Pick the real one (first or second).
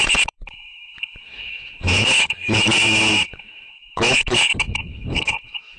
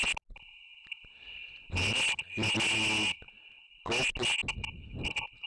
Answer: second